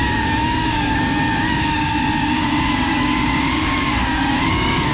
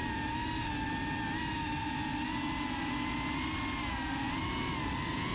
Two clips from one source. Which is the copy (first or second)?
first